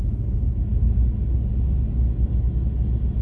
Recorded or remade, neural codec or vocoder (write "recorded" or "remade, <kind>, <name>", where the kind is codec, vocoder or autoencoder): recorded